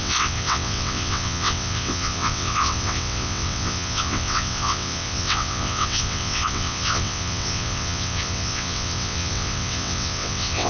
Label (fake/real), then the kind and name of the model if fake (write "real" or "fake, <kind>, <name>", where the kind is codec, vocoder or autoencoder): fake, vocoder, WaveNeXt